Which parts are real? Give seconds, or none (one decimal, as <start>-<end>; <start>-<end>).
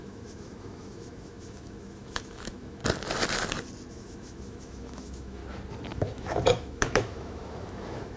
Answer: 2.8-3.9; 5.4-5.9